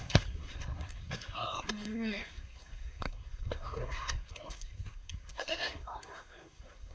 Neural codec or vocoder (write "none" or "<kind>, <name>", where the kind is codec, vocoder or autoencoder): codec, SNAC